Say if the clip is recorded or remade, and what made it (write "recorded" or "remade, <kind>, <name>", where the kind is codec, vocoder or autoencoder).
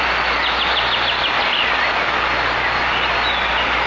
recorded